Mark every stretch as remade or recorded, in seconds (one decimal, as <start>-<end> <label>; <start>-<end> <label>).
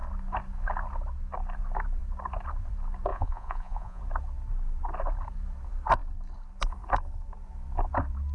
0.0-3.1 recorded; 3.1-4.0 remade; 4.0-8.3 recorded